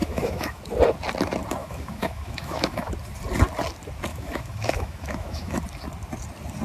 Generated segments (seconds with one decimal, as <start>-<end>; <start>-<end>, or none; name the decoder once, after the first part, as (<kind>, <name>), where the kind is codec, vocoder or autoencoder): 0.0-0.6 (autoencoder, DAC-VAE); 1.6-2.9; 4.1-5.6